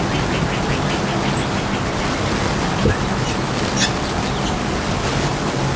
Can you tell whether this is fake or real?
real